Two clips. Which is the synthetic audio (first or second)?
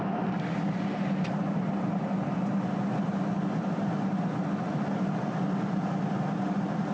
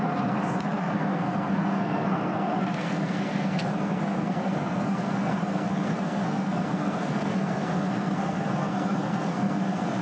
second